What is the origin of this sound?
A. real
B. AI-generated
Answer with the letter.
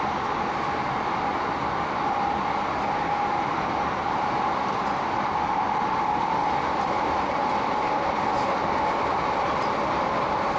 A